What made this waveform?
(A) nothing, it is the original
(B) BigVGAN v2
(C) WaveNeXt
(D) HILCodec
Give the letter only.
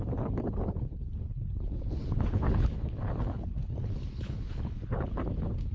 D